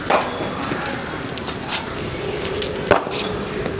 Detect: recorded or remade recorded